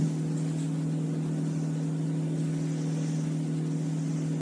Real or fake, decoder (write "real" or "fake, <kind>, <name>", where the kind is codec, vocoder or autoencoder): real